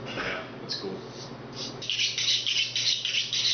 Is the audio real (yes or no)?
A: yes